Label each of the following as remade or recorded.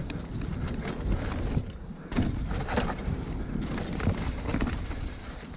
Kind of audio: recorded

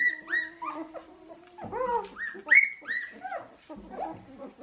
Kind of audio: recorded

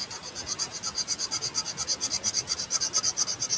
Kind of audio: recorded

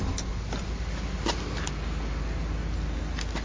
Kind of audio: recorded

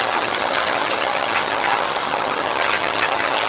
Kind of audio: remade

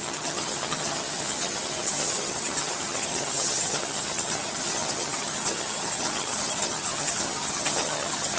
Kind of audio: remade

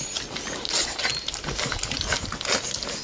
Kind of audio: recorded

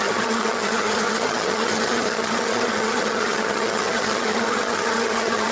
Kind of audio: remade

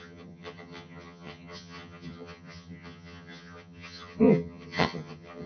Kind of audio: remade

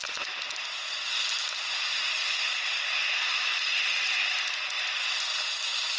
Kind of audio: recorded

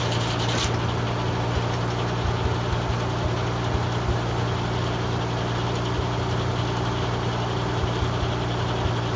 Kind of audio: recorded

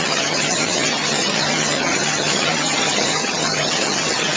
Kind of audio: remade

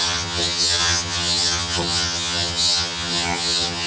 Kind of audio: remade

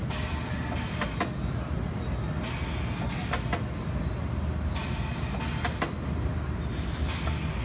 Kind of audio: recorded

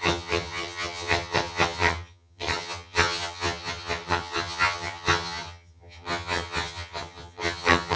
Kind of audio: remade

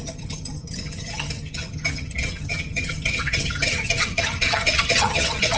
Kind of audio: remade